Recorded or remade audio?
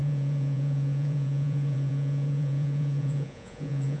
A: remade